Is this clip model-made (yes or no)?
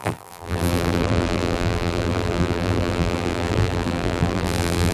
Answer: yes